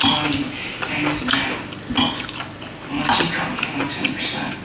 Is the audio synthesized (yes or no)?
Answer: no